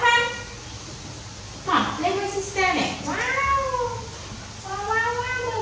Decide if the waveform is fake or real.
real